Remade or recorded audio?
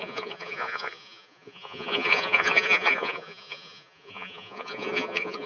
remade